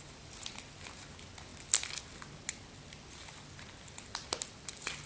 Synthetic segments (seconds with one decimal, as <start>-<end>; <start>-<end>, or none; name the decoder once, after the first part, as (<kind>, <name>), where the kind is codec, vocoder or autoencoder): none